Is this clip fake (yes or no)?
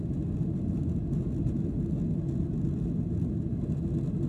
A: no